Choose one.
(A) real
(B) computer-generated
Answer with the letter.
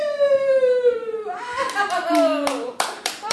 B